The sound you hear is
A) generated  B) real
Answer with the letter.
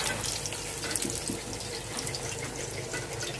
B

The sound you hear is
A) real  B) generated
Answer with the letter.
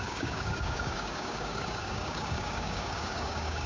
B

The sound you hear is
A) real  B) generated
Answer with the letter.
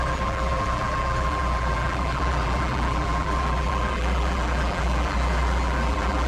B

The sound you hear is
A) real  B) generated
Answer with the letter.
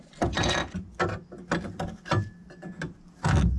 A